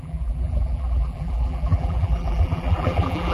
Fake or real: fake